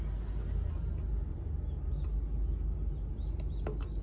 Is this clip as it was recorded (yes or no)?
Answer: yes